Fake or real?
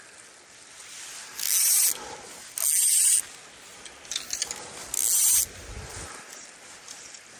real